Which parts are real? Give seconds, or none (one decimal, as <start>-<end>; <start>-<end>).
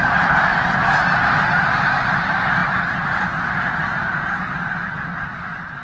0.5-1.8